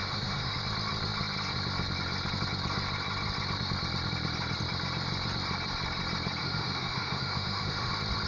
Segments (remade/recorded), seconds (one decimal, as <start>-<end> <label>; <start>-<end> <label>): 0.0-0.6 remade; 0.6-6.4 recorded; 6.4-7.9 remade; 7.9-8.3 recorded